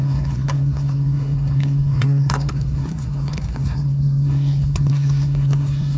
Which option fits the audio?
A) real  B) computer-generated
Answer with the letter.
B